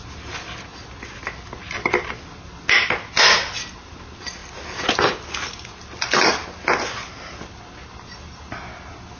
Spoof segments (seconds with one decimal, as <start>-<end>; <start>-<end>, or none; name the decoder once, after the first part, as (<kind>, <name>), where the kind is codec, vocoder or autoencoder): none